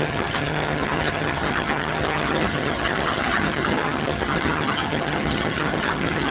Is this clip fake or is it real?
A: fake